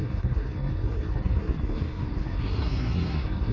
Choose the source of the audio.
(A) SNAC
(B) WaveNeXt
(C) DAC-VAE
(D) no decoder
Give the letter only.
A